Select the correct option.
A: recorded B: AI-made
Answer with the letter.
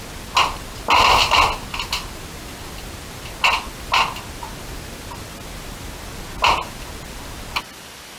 A